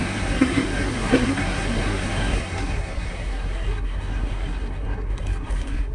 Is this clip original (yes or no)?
no